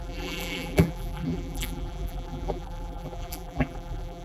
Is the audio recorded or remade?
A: remade